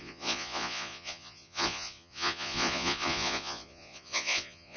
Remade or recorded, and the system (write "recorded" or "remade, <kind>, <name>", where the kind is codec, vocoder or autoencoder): remade, vocoder, Vocos